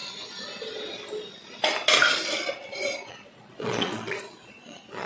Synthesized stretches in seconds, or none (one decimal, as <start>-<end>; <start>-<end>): 3.1-5.1